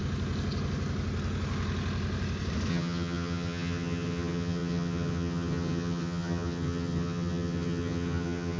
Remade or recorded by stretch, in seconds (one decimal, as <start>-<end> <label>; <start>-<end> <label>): 0.0-2.7 recorded; 2.7-8.6 remade